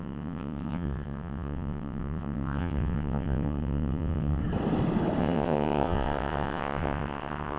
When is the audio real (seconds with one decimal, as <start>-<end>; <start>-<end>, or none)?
4.4-5.2